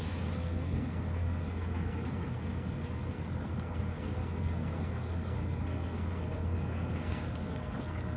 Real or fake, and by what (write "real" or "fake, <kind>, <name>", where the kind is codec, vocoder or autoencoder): fake, codec, SNAC